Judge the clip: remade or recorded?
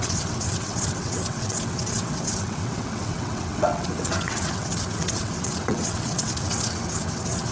remade